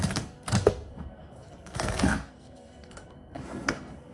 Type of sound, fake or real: fake